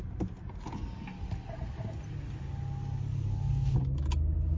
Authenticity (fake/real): real